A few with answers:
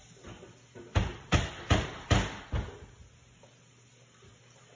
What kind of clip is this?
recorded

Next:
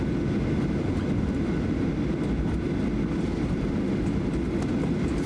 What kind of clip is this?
recorded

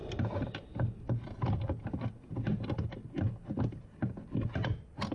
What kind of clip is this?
recorded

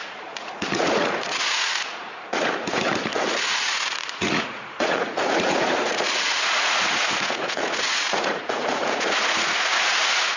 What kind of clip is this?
remade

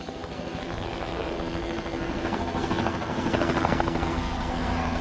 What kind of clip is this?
remade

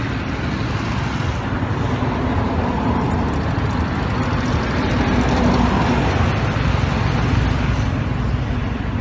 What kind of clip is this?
recorded